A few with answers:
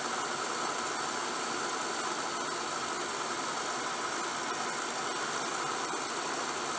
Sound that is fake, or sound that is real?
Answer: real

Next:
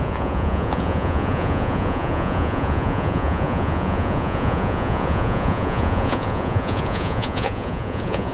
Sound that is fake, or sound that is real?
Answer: fake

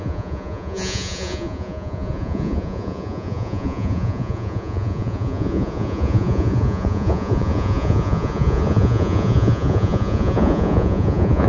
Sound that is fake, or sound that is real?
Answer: fake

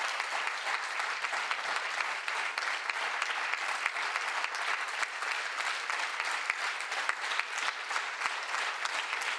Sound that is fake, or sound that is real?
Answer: real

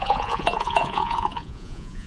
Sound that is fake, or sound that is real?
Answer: fake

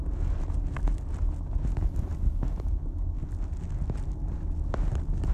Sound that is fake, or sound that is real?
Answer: real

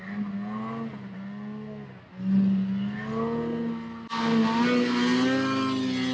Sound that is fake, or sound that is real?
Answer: real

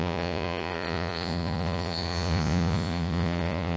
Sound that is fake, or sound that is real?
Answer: fake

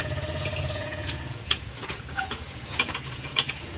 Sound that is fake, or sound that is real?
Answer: fake